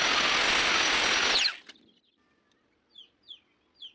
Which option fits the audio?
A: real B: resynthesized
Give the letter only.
A